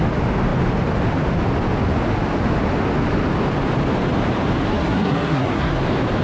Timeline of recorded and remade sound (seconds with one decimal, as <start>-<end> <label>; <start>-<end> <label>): 0.0-4.7 recorded; 4.7-5.8 remade; 5.8-6.2 recorded